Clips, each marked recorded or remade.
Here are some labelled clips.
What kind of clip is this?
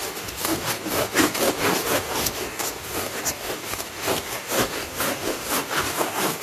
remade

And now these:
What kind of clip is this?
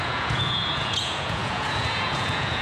remade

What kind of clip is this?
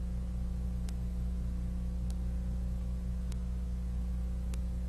recorded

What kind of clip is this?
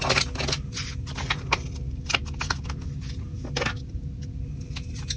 recorded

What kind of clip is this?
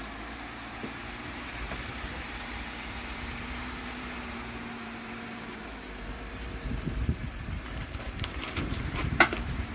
remade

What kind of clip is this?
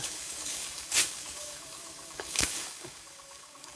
remade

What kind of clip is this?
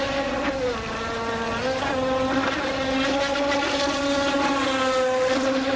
recorded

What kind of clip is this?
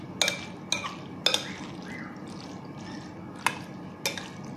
recorded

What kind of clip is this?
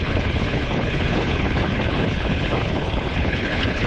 remade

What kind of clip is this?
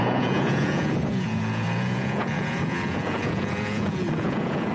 remade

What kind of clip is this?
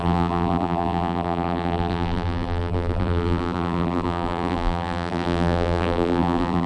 remade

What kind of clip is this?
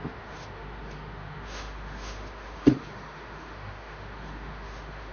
remade